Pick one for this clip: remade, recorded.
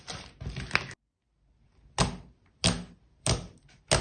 recorded